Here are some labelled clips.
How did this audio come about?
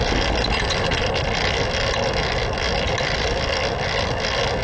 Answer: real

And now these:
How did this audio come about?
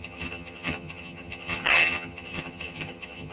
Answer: fake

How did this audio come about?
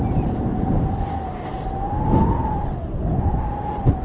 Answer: real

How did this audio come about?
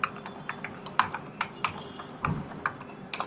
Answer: real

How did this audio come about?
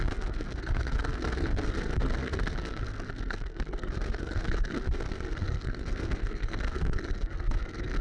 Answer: fake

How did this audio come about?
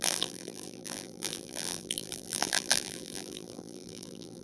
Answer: fake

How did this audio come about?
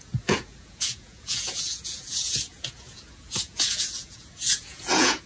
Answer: fake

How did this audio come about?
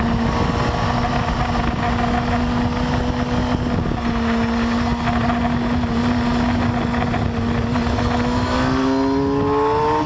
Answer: real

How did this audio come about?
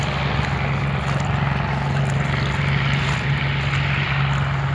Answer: real